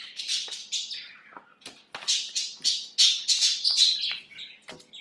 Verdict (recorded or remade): recorded